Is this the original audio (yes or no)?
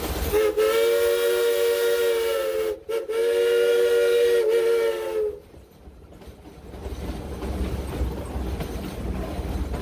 yes